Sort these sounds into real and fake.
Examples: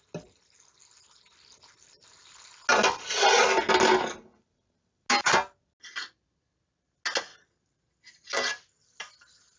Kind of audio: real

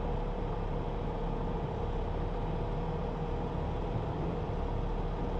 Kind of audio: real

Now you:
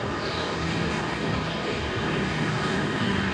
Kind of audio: fake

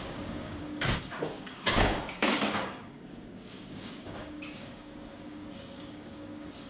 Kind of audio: fake